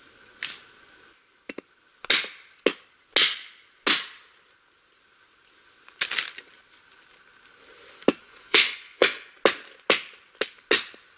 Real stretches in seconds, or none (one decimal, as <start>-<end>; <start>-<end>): 0.0-8.2; 9.3-11.2